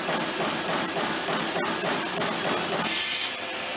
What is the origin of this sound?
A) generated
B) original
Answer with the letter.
B